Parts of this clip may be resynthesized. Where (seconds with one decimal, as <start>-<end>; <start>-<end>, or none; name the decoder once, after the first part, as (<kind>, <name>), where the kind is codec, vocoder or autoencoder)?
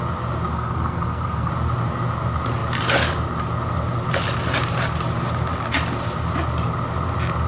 0.5-1.5 (codec, SNAC)